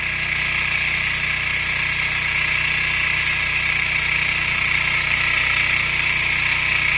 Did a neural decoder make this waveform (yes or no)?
no